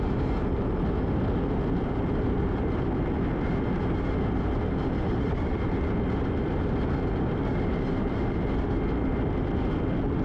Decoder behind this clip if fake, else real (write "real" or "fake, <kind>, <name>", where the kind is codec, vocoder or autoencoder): real